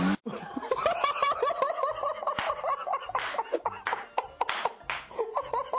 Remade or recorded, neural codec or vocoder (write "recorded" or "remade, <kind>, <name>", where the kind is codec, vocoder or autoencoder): recorded